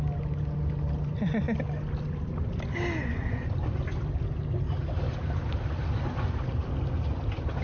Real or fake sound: real